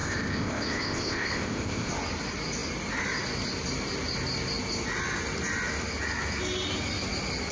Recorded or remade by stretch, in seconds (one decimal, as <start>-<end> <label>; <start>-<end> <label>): 0.0-1.9 remade; 1.9-7.5 recorded